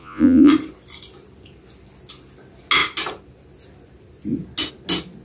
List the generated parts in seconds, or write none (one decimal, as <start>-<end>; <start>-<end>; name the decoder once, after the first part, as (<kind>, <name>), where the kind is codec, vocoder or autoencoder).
0.0-0.5 (vocoder, Vocos)